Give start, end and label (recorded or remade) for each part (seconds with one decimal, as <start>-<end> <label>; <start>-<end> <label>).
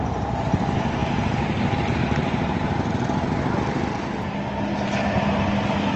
0.0-6.0 recorded